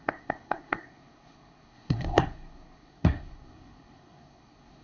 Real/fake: fake